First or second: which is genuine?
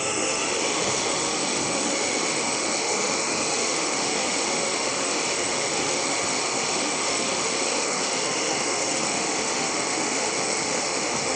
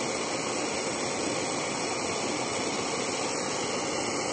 second